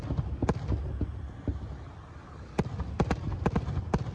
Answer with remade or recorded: recorded